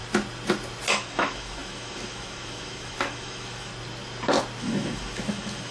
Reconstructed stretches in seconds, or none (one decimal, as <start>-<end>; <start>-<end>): 0.9-3.7; 4.6-5.7